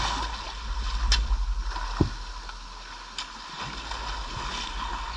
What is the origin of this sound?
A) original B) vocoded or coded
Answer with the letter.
A